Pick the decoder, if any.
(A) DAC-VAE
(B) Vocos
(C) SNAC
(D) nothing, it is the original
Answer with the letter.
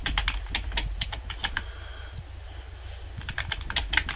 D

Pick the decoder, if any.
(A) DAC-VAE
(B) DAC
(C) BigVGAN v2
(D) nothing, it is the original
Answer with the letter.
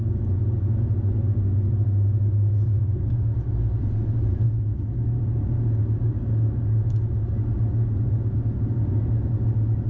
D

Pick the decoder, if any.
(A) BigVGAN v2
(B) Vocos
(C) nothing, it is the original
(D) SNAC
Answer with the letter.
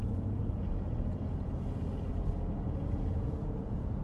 B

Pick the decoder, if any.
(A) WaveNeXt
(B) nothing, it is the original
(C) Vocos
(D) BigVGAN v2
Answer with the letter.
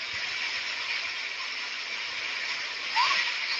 B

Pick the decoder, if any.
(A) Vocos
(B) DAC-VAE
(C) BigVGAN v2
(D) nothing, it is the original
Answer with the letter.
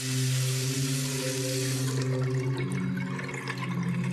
D